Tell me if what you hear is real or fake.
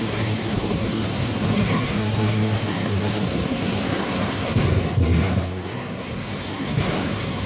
fake